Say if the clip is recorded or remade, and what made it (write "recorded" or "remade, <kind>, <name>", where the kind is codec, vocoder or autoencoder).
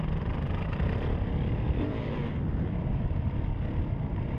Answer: recorded